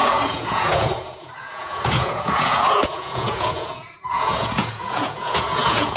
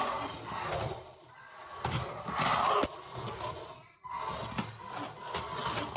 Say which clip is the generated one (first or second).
first